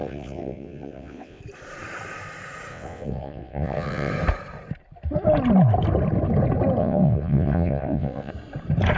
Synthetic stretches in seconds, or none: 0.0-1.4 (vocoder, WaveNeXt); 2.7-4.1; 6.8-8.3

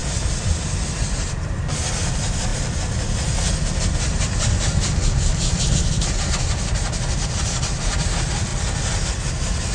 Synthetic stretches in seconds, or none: none

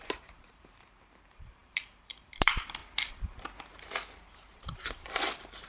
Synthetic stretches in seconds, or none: 0.0-2.8 (vocoder, BigVGAN v2); 4.4-5.7

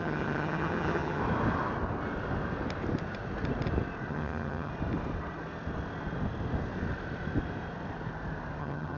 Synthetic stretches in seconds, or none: 0.0-1.2 (vocoder, HiFi-GAN); 4.1-4.7; 8.6-9.0

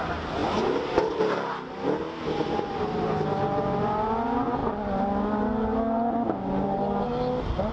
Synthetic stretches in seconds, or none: none

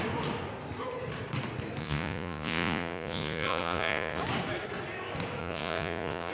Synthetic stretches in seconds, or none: 1.8-4.2 (vocoder, Vocos); 5.4-6.3